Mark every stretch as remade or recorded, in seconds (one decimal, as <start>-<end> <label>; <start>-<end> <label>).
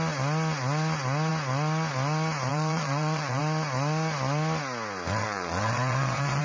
0.0-2.5 recorded; 2.5-3.4 remade; 3.4-5.2 recorded; 5.2-6.4 remade